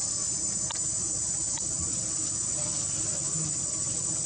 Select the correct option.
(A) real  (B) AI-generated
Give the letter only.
A